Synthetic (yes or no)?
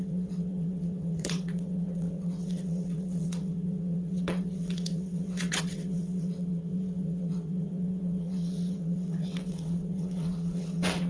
yes